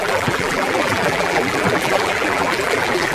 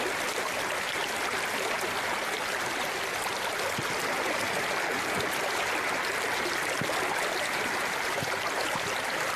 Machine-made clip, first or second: first